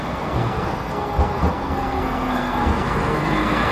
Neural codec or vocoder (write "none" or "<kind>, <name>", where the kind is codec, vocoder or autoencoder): codec, SNAC